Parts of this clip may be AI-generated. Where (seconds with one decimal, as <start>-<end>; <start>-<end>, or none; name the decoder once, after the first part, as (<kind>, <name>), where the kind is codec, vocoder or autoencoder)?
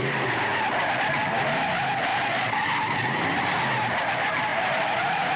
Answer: 4.5-5.4 (vocoder, Vocos)